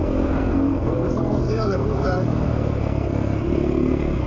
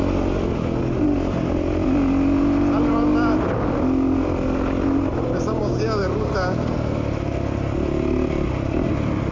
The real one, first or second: second